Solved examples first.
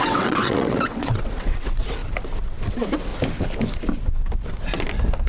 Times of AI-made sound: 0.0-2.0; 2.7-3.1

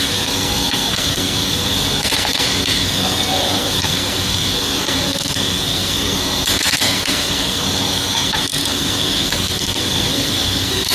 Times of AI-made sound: 0.0-10.9

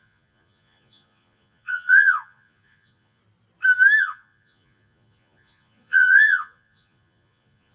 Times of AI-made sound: 0.0-3.2; 4.0-7.7

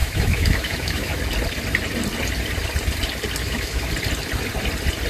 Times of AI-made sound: 0.0-1.2; 3.4-3.9